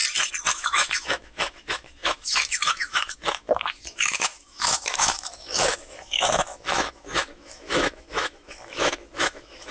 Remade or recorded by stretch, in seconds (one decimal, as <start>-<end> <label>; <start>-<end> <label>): 0.0-0.5 recorded; 0.5-9.7 remade